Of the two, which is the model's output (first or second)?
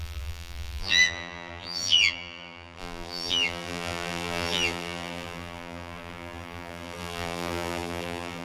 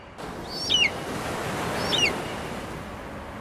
first